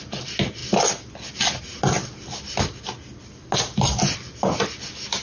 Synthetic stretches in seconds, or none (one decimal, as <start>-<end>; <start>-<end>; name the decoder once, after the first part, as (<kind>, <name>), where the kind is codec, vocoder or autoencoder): none